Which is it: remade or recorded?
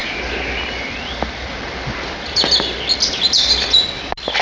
recorded